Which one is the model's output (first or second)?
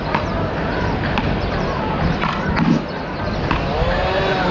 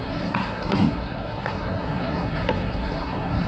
second